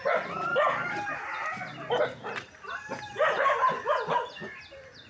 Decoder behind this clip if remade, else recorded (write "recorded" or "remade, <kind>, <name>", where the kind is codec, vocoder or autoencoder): recorded